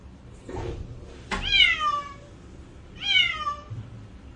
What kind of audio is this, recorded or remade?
recorded